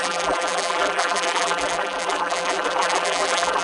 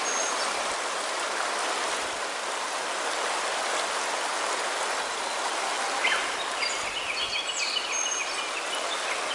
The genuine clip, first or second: second